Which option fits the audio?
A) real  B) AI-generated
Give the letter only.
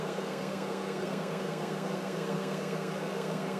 B